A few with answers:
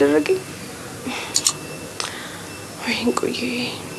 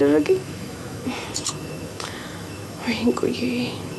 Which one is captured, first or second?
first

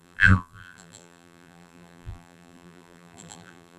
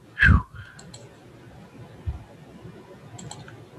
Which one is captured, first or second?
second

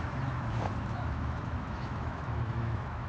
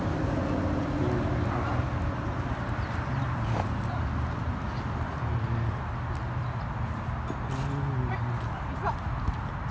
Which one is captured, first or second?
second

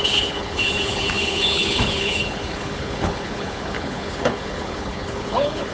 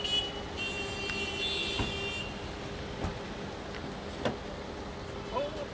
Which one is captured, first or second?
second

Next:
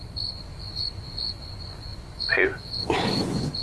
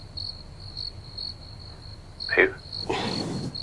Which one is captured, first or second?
second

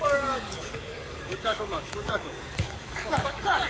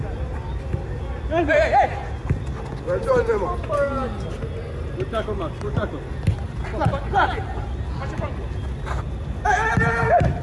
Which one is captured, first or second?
second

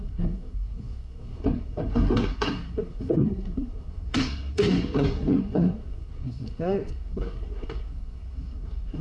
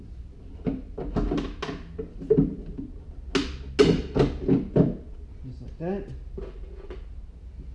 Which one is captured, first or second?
second